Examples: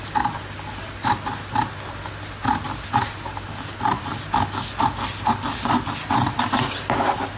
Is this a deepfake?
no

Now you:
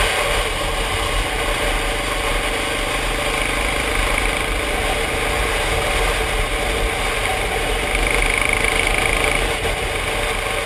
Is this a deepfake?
no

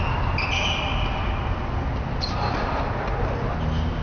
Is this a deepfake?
no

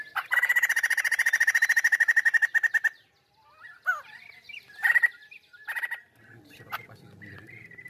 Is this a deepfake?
no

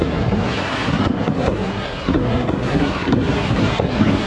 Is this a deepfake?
yes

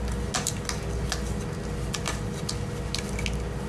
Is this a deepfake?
no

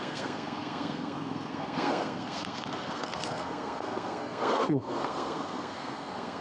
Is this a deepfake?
yes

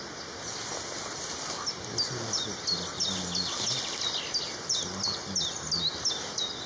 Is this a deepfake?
no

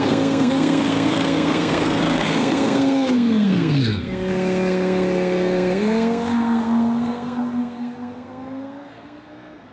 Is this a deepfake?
yes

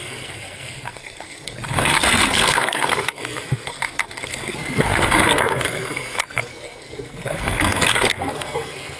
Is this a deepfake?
yes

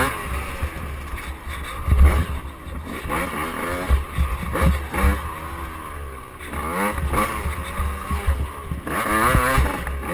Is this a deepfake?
no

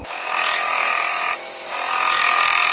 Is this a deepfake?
no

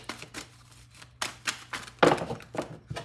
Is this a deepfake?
no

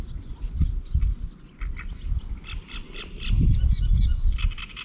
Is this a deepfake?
no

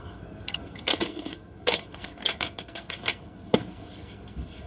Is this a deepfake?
yes